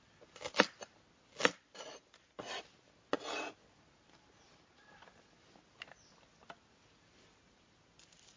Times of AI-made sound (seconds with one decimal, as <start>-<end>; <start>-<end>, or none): none